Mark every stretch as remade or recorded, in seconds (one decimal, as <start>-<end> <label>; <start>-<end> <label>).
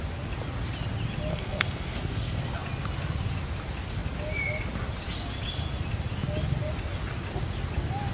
0.0-1.3 recorded; 1.3-2.4 remade; 2.4-8.1 recorded